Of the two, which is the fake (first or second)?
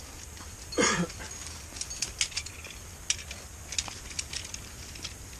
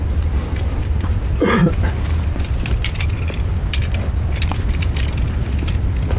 second